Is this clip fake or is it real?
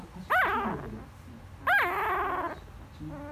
real